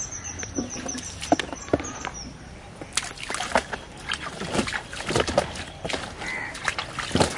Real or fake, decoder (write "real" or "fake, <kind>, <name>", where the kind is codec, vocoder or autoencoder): real